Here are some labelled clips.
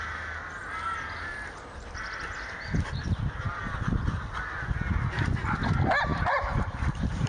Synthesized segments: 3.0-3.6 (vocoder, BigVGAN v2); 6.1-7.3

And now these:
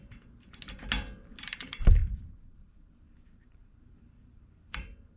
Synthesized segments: 2.0-5.2 (vocoder, BigVGAN v2)

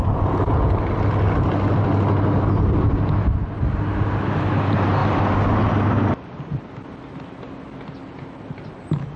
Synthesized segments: none